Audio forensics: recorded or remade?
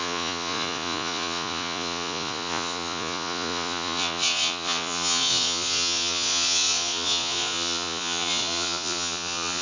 remade